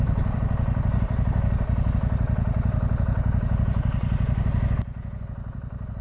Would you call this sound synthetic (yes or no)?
yes